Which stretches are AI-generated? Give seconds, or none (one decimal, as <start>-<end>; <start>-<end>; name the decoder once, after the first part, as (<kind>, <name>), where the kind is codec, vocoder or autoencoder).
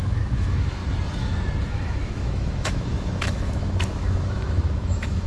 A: 0.0-0.8 (autoencoder, DAC-VAE); 1.7-5.3